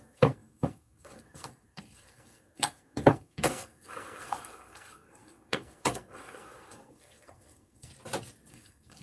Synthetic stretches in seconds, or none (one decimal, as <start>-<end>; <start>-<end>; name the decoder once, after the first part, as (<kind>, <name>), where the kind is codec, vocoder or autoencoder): 0.0-7.9 (codec, SNAC); 8.5-9.0